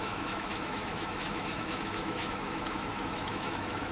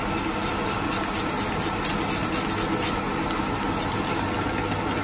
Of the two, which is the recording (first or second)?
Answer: second